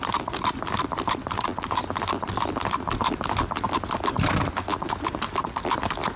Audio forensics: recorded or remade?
recorded